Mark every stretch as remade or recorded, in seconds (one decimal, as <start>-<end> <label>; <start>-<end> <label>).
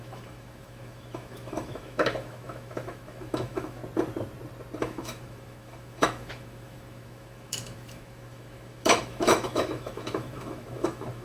0.0-3.8 remade; 3.8-4.8 recorded; 4.8-11.2 remade